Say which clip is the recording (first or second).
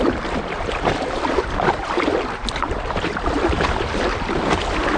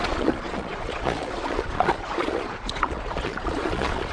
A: first